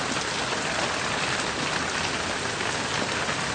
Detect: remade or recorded recorded